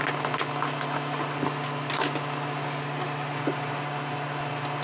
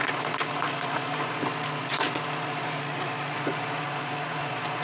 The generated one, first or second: second